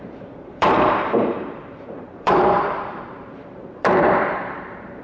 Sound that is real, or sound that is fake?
fake